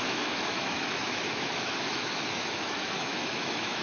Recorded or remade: remade